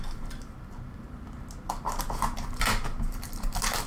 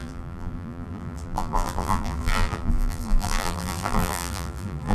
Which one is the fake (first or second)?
second